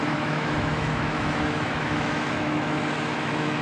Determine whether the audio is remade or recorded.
remade